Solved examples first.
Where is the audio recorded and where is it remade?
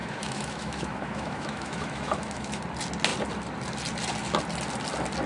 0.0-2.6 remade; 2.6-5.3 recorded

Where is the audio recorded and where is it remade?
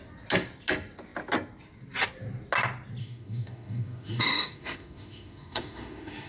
0.0-3.0 recorded; 3.0-6.3 remade